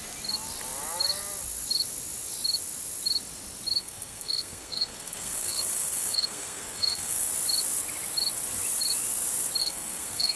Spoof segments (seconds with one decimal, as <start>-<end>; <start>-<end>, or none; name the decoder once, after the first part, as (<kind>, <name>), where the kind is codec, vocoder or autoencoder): 3.8-7.3 (codec, SNAC); 9.6-10.4